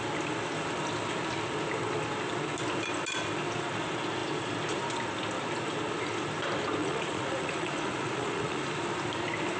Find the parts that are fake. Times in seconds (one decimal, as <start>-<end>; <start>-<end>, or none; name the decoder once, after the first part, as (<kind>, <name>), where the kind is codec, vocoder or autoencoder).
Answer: 6.8-8.7 (vocoder, Vocos)